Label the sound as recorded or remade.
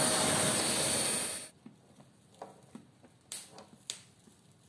recorded